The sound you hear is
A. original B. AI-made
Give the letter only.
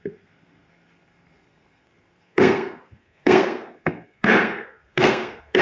B